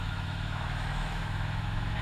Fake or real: fake